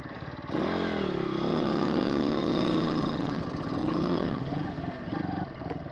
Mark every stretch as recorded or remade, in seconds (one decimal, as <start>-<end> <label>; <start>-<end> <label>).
0.0-1.5 recorded; 1.5-3.4 remade; 3.4-3.8 recorded; 3.8-4.4 remade; 4.4-5.9 recorded

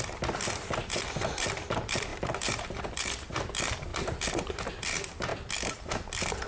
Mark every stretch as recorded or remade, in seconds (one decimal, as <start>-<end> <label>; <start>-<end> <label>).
0.0-2.1 remade; 2.1-2.8 recorded; 2.8-5.3 remade; 5.3-6.5 recorded

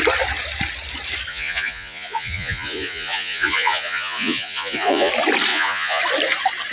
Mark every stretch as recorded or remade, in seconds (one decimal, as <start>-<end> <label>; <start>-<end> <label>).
0.0-1.3 recorded; 1.3-5.1 remade; 5.1-5.5 recorded; 5.5-6.0 remade; 6.0-6.7 recorded

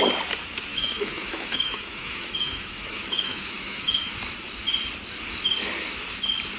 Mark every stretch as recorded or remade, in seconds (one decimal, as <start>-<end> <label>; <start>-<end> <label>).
0.0-0.7 recorded; 0.7-4.1 remade; 4.1-6.6 recorded

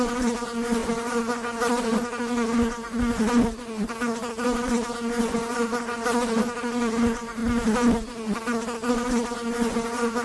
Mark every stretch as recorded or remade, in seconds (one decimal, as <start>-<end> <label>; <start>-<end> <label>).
0.0-7.4 remade; 7.4-8.9 recorded; 8.9-10.2 remade

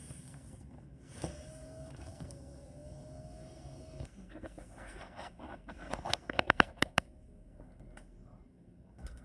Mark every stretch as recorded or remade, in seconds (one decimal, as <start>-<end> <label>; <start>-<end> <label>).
0.0-9.2 remade

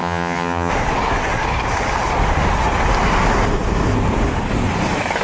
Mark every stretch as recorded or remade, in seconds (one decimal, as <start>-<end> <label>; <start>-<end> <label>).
0.0-0.7 remade; 0.7-5.2 recorded

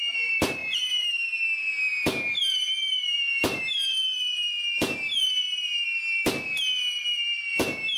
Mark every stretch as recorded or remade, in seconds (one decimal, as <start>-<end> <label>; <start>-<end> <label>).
0.0-0.6 recorded; 0.6-3.6 remade; 3.6-8.0 recorded